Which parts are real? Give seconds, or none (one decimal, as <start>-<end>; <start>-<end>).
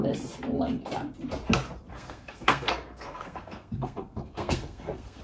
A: 0.0-1.9